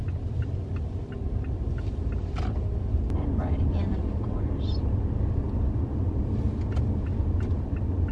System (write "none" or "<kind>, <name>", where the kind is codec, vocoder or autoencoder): none